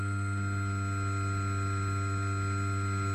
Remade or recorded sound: recorded